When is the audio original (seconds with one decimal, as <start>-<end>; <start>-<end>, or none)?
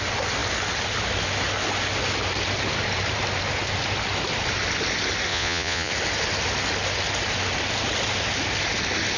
0.0-5.3; 5.9-9.2